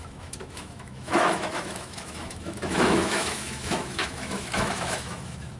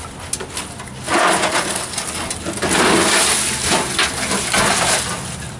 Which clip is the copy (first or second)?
first